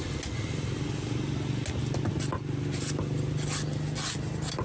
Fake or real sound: real